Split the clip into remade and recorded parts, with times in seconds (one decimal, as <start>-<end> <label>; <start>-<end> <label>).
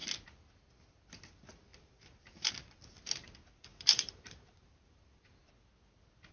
0.0-1.7 recorded; 1.7-2.5 remade; 2.5-3.7 recorded; 3.7-5.5 remade; 5.5-6.3 recorded